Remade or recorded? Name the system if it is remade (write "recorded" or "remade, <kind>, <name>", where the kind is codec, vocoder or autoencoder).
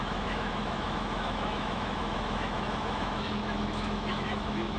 remade, autoencoder, DAC-VAE